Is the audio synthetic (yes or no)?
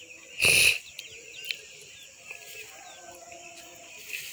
no